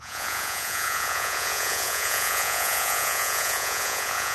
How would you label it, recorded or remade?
remade